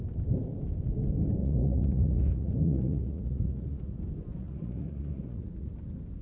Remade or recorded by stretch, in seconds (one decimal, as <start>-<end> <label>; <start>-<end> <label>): 0.0-1.4 recorded; 1.4-4.0 remade; 4.0-4.4 recorded; 4.4-5.7 remade; 5.7-6.2 recorded